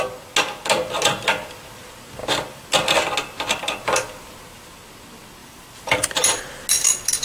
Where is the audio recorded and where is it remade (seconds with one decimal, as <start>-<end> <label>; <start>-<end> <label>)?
0.0-5.4 recorded; 5.4-6.4 remade; 6.4-7.2 recorded

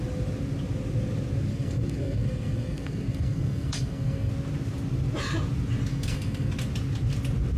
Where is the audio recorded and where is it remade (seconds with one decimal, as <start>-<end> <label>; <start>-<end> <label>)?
0.0-1.5 recorded; 1.5-4.3 remade; 4.3-5.9 recorded; 5.9-6.5 remade; 6.5-7.6 recorded